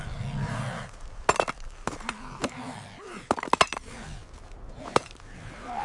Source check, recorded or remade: recorded